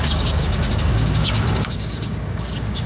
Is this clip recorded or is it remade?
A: remade